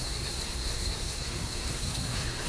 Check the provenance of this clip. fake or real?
fake